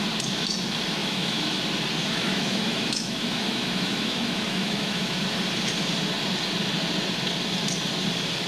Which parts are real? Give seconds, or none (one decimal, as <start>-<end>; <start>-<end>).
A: 0.0-1.0; 1.6-2.0; 5.1-8.5